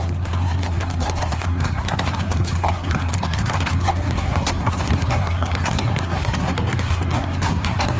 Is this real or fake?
fake